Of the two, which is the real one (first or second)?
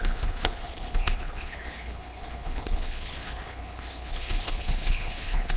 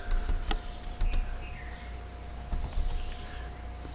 second